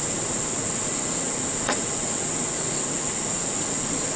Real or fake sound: fake